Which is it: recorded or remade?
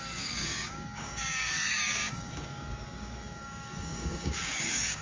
remade